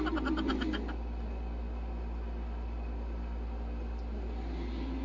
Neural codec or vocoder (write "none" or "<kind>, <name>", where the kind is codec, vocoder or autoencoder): none